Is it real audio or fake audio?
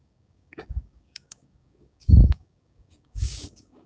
fake